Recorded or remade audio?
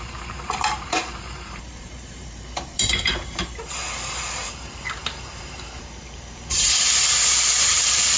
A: remade